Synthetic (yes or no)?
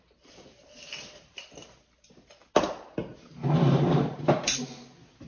no